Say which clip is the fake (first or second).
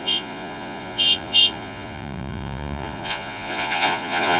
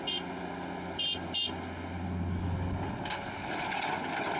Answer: first